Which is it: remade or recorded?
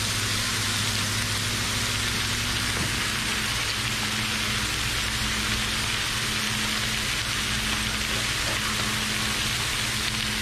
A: recorded